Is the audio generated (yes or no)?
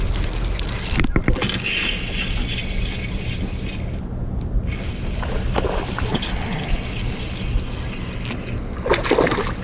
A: no